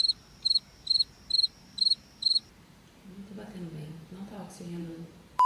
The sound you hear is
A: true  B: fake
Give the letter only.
B